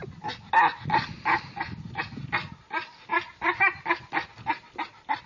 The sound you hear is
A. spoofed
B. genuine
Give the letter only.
B